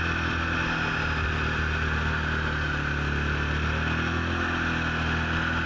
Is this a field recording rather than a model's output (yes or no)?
yes